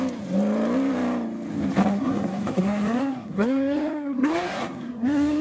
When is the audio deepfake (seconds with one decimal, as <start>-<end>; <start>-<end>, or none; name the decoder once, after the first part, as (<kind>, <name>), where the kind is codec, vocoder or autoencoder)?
1.9-5.4 (codec, SNAC)